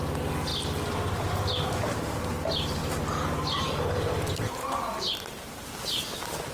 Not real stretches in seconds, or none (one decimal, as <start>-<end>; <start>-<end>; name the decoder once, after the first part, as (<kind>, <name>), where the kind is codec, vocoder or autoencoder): none